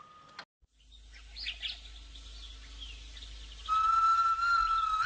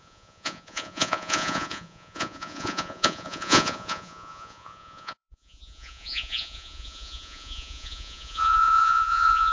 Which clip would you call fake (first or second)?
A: second